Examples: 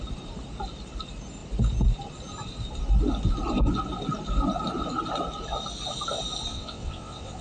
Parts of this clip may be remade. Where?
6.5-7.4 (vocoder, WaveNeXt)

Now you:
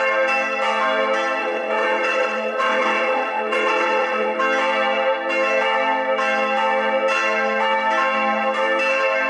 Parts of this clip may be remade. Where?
1.4-4.4 (vocoder, WaveNeXt)

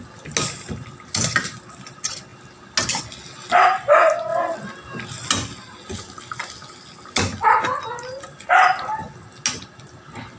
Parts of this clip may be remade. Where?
none

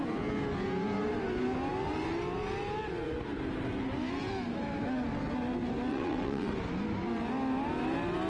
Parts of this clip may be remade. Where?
5.9-6.5 (vocoder, WaveNeXt)

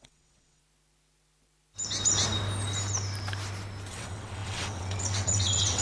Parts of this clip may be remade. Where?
0.0-0.6 (vocoder, WaveNeXt); 3.9-5.8

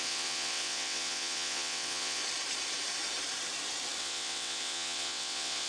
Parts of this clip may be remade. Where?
0.0-2.2 (vocoder, WaveNeXt); 4.0-5.7

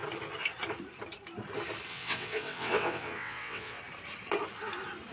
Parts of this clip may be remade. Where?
1.9-3.8 (vocoder, WaveNeXt)

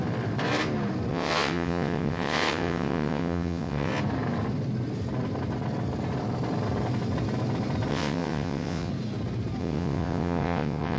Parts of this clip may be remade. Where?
1.1-3.9 (vocoder, WaveNeXt); 7.9-8.9; 9.6-11.0